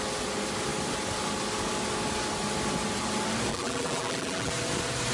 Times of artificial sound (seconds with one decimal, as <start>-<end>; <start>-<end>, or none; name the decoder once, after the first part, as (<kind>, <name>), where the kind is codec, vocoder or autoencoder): 3.5-4.5 (vocoder, BigVGAN v2)